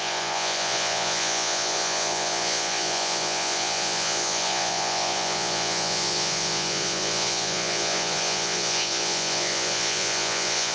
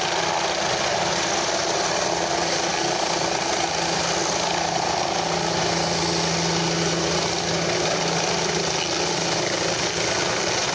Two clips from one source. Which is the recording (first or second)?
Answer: second